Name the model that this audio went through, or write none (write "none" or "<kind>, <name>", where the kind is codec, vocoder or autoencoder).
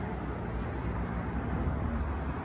none